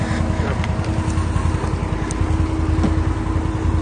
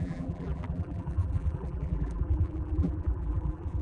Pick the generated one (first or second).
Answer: second